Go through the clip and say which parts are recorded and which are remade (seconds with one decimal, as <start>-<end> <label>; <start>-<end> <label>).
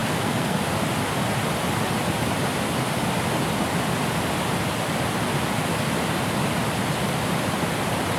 0.0-0.6 remade; 0.6-8.2 recorded